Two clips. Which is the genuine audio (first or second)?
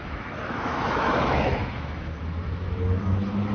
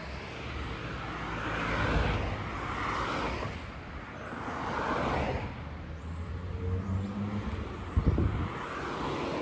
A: second